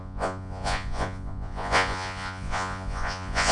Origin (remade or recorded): remade